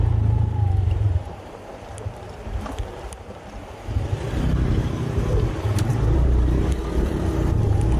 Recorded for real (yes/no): no